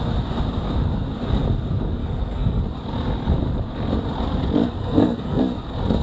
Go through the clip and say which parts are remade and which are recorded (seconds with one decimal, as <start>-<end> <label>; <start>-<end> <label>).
0.0-2.0 recorded; 2.0-2.6 remade; 2.6-4.8 recorded; 4.8-5.4 remade; 5.4-6.0 recorded